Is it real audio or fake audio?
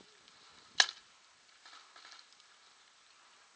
real